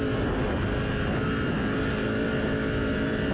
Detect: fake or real real